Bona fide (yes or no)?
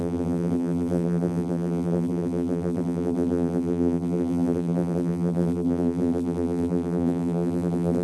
no